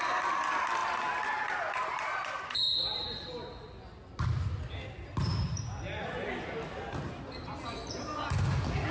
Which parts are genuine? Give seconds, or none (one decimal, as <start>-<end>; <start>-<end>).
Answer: 0.0-8.9